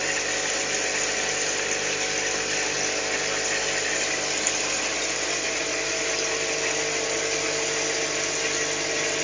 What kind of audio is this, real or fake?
real